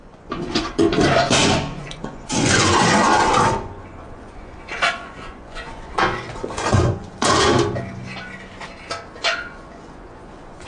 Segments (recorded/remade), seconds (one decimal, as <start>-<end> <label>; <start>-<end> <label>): 0.0-7.5 remade; 7.5-9.2 recorded; 9.2-10.7 remade